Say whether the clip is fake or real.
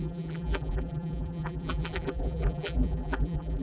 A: fake